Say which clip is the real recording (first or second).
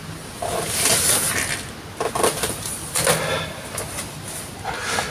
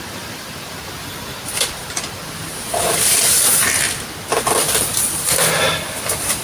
first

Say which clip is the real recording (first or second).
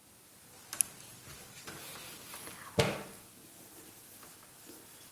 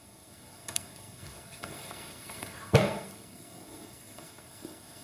first